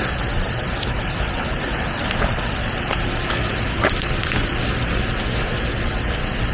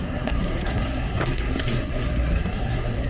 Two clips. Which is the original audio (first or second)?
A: first